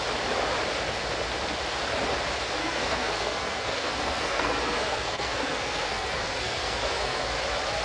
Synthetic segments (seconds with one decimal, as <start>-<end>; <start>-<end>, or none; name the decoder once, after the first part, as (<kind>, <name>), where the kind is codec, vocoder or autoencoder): 2.6-7.3 (codec, SNAC)